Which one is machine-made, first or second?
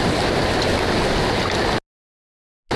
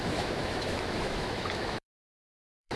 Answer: second